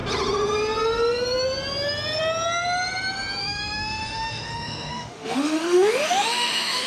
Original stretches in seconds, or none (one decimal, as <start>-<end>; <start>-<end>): 0.0-3.4